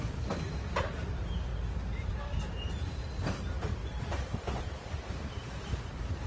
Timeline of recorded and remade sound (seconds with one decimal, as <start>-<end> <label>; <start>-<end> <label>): 0.0-1.5 remade; 1.5-2.1 recorded; 2.1-3.8 remade; 3.8-4.6 recorded; 4.6-6.3 remade